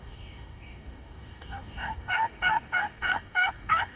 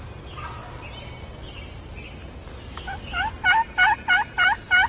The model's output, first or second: first